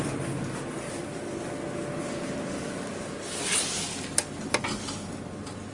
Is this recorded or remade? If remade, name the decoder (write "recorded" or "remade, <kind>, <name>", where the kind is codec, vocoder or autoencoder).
recorded